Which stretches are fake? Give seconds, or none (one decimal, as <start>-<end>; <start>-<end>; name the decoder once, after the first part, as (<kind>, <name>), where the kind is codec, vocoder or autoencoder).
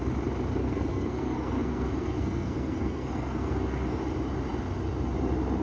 0.6-4.0 (codec, SNAC)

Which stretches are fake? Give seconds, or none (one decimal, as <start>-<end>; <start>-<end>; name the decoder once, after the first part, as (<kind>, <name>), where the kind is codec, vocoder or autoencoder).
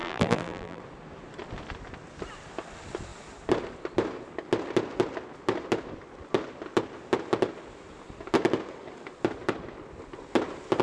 0.0-0.8 (vocoder, BigVGAN v2)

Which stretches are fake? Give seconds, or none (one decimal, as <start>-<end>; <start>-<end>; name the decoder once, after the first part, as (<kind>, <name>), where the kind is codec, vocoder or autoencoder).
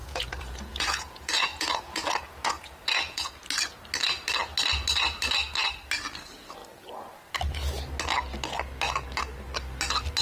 0.0-3.3 (vocoder, Vocos)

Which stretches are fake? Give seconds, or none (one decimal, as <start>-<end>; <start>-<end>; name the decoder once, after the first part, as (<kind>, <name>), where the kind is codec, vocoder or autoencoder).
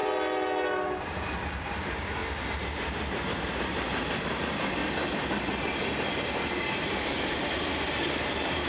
1.0-2.2 (vocoder, BigVGAN v2); 2.8-4.8; 5.6-8.7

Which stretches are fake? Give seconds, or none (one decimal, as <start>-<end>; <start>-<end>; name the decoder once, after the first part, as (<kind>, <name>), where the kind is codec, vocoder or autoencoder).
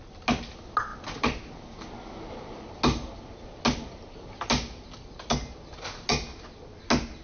none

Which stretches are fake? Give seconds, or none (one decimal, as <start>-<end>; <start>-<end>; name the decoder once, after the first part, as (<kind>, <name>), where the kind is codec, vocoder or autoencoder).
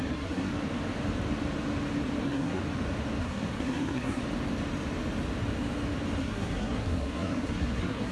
0.0-0.5 (codec, SNAC); 2.2-2.6; 3.2-4.2; 6.2-8.1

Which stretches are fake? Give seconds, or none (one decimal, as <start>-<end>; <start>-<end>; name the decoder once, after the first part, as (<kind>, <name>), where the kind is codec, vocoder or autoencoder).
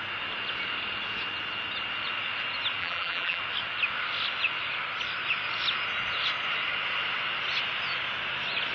2.8-3.4 (vocoder, BigVGAN v2)